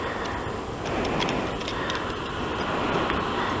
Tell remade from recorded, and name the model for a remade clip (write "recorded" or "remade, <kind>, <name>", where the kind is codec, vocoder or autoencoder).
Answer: recorded